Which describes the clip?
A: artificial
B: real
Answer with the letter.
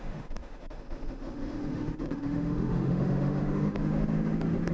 A